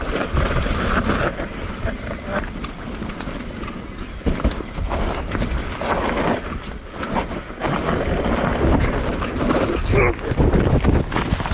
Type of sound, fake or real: real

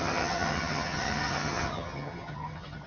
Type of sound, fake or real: fake